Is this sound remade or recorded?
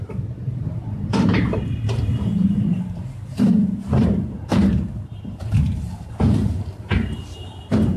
remade